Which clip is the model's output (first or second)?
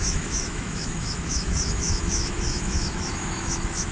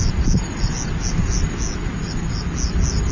first